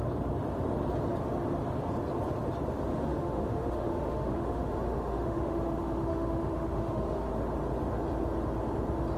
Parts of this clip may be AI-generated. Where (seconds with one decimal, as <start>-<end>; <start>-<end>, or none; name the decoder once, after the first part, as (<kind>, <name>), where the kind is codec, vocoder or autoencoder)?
2.9-7.3 (autoencoder, DAC-VAE)